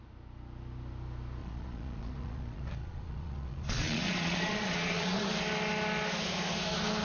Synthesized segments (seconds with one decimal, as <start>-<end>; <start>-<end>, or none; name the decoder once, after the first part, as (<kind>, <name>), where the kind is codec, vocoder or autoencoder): 1.4-5.3 (vocoder, Vocos)